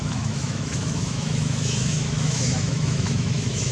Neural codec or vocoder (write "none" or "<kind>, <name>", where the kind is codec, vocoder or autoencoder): autoencoder, DAC-VAE